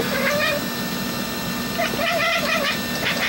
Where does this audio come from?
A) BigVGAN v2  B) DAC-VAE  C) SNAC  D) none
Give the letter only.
D